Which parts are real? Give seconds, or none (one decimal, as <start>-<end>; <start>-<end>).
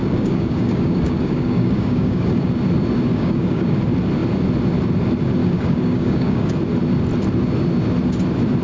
2.5-3.1; 3.8-5.4; 6.6-8.6